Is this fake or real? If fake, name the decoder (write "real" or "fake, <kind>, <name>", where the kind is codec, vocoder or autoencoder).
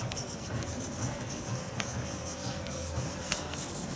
fake, codec, SNAC